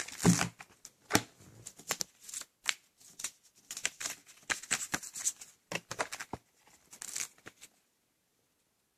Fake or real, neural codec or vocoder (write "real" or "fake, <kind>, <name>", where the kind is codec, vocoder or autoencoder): real